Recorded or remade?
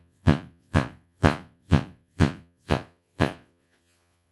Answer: remade